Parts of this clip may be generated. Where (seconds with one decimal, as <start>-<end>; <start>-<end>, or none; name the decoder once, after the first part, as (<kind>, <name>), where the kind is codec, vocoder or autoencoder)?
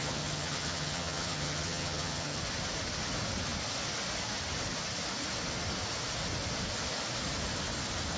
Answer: 0.0-2.4 (vocoder, HiFi-GAN)